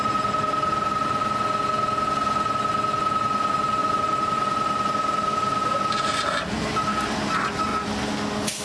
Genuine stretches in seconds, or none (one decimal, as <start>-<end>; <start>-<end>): 1.2-3.0; 7.7-8.6